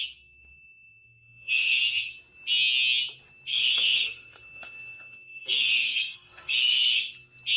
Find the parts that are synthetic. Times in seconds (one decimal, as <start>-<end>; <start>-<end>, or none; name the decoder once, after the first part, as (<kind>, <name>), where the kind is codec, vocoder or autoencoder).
0.4-2.1 (codec, SNAC); 3.5-7.1